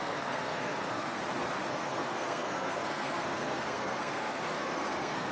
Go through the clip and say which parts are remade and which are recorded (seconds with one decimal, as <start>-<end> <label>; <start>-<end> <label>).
0.0-1.2 remade; 1.2-1.7 recorded; 1.7-5.3 remade